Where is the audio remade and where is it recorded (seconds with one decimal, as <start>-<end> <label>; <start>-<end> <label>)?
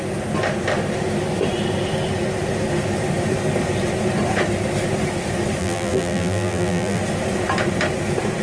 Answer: 0.0-5.6 recorded; 5.6-7.0 remade; 7.0-8.4 recorded